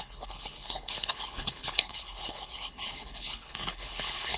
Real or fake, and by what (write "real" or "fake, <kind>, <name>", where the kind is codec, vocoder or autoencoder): fake, codec, HILCodec